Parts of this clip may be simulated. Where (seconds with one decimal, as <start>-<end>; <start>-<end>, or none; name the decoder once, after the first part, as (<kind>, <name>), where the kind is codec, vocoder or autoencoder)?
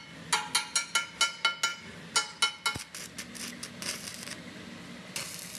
none